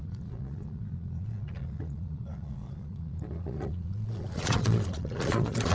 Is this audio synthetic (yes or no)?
yes